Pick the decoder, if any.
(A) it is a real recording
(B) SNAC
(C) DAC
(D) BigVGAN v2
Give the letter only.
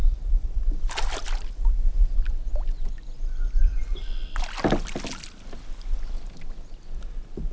A